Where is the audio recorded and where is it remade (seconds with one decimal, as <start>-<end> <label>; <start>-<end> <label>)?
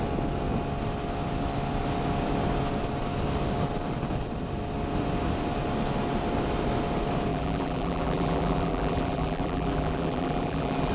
0.0-7.3 recorded; 7.3-10.9 remade